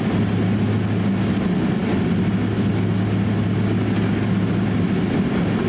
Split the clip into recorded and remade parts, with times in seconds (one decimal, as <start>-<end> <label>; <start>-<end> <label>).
0.0-5.7 recorded